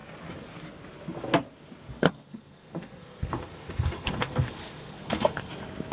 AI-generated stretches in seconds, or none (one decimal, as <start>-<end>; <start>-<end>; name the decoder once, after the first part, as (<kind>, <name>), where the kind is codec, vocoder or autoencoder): 2.0-5.5 (codec, SNAC)